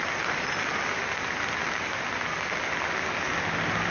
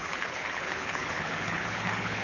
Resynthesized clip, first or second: second